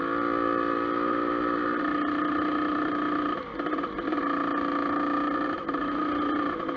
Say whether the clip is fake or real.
real